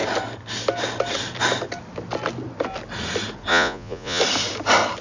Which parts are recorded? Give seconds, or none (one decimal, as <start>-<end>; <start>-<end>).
0.0-3.5; 4.2-5.0